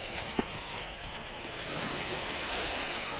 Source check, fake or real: fake